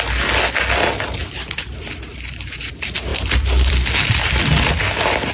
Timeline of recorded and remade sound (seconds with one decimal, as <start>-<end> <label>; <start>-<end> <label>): 0.0-3.1 recorded; 3.1-4.8 remade; 4.8-5.3 recorded